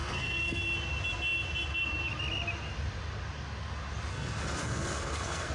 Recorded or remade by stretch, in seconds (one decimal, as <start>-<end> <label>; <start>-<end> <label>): 0.0-0.6 remade; 0.6-4.1 recorded; 4.1-5.5 remade